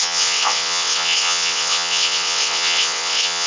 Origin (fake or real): fake